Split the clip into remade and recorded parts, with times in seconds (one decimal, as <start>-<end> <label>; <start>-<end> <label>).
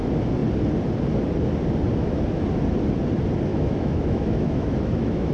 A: 0.0-3.5 recorded; 3.5-5.3 remade